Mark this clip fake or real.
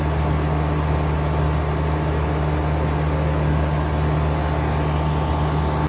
real